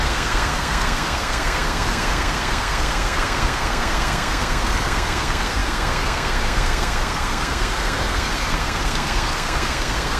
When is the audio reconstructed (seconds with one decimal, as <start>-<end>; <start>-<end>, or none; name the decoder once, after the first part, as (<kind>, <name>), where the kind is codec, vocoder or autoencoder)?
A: 0.0-10.2 (codec, SNAC)